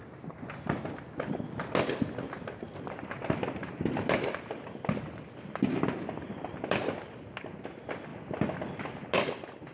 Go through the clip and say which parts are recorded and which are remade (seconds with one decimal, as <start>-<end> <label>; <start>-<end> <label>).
0.0-3.6 recorded; 3.6-7.2 remade; 7.2-9.7 recorded